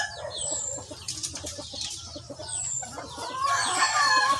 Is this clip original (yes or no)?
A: yes